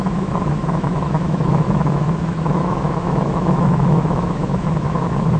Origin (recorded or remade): remade